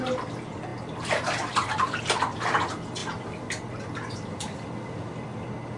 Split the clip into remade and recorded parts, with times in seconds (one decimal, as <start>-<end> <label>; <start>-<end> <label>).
0.0-5.8 recorded

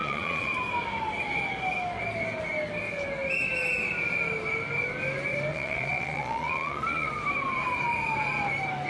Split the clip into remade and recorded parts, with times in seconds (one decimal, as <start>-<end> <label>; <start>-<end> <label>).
0.0-0.5 remade; 0.5-5.5 recorded; 5.5-7.1 remade; 7.1-8.9 recorded

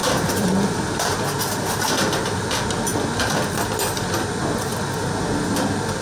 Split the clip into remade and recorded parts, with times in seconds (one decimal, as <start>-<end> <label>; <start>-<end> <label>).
0.0-1.2 remade; 1.2-6.0 recorded

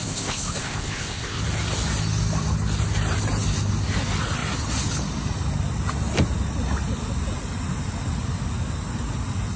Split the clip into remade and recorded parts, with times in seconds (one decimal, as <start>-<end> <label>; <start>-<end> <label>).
0.0-1.4 remade; 1.4-9.6 recorded

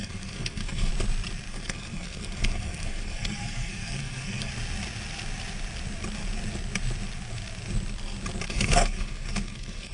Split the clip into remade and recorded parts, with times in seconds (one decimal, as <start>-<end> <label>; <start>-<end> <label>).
0.0-0.9 remade; 0.9-1.5 recorded; 1.5-4.5 remade; 4.5-8.5 recorded; 8.5-9.9 remade

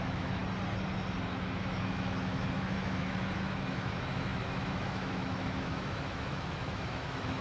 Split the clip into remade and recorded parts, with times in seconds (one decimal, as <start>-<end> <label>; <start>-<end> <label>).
0.0-0.4 remade; 0.4-1.3 recorded; 1.3-7.4 remade

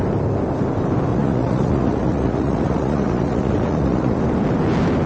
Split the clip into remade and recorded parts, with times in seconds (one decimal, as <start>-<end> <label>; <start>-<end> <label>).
0.0-1.1 recorded; 1.1-4.2 remade; 4.2-5.1 recorded

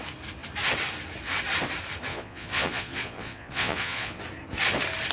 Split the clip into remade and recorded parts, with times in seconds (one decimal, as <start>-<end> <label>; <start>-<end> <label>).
0.0-2.1 recorded; 2.1-4.2 remade; 4.2-5.1 recorded